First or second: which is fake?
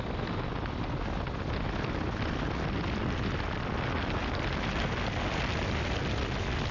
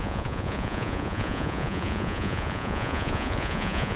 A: second